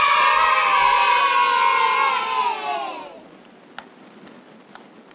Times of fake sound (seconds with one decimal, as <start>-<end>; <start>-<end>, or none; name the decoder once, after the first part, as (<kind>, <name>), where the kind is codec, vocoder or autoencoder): none